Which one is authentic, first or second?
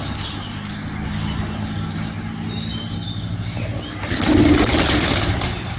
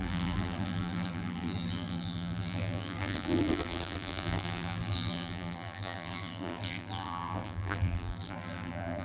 first